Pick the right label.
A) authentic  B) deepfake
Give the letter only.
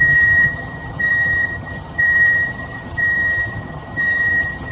B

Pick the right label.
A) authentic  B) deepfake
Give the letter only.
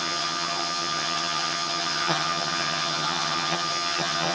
B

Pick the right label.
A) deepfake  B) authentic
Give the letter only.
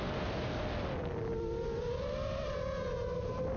B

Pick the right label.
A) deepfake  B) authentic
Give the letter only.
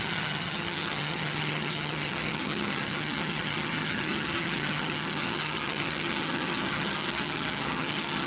A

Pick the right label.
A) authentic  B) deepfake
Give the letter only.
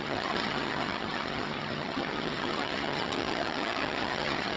B